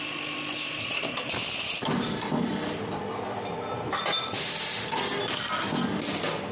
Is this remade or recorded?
recorded